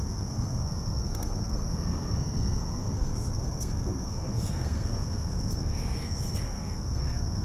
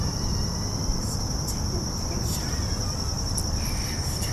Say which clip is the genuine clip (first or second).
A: second